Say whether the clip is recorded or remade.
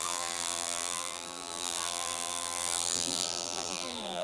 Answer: remade